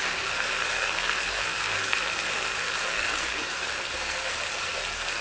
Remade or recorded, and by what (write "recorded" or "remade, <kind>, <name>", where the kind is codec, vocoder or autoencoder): remade, codec, SNAC